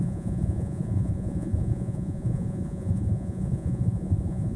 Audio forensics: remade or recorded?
remade